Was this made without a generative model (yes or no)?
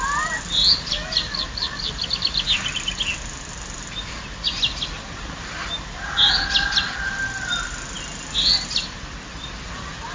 yes